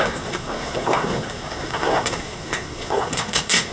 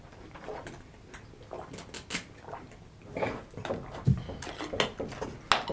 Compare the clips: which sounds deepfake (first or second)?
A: first